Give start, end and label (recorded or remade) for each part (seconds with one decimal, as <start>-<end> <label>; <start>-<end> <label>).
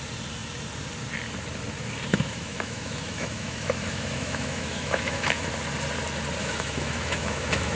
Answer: 0.0-2.1 recorded; 2.1-5.5 remade; 5.5-6.4 recorded; 6.4-7.8 remade